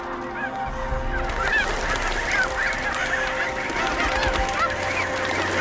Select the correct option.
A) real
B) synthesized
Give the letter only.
A